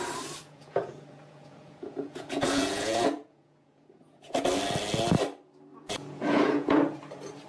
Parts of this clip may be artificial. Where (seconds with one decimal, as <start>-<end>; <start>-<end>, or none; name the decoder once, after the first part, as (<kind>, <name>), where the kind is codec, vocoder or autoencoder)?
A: 0.4-4.4 (vocoder, Vocos); 5.7-6.8

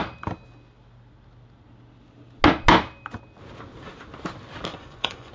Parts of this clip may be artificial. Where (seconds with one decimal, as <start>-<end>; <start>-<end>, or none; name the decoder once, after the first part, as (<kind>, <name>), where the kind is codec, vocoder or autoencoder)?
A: 4.7-5.3 (vocoder, Vocos)

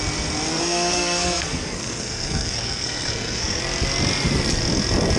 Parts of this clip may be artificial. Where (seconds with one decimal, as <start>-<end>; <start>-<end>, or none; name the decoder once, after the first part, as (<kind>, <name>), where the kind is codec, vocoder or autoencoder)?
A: 0.5-3.6 (codec, SNAC)

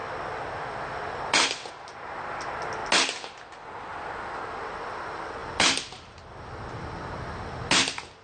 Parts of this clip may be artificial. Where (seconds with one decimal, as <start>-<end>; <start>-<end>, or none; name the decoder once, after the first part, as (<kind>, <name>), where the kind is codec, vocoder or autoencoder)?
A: none

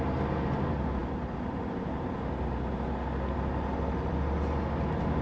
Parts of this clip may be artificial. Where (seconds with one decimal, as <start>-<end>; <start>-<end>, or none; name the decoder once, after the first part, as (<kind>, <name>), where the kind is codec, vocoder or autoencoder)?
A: none

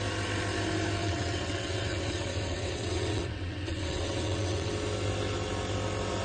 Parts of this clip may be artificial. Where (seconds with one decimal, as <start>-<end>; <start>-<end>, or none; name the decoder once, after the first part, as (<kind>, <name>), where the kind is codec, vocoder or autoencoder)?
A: 1.0-4.7 (vocoder, WaveNeXt)

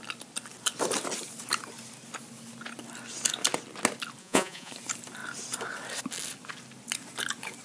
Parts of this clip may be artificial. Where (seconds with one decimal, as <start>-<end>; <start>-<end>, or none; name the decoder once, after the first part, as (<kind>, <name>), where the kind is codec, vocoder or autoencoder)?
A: 4.2-4.7 (vocoder, Vocos)